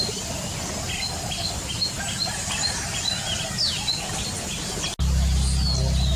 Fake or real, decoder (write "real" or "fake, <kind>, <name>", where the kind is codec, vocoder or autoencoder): real